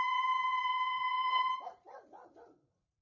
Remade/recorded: remade